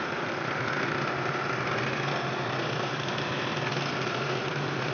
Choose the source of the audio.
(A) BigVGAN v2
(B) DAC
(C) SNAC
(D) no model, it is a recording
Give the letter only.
D